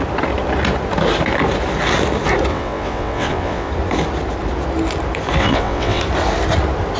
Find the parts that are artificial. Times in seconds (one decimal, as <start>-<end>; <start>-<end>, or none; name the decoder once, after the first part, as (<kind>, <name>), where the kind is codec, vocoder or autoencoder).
2.5-3.7 (vocoder, WaveNeXt); 5.4-6.0